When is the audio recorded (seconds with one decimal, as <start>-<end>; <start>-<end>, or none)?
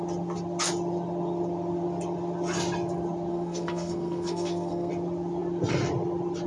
0.0-3.3; 4.9-6.5